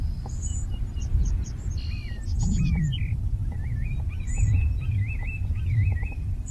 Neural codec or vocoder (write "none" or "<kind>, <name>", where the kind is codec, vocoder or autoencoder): vocoder, BigVGAN v2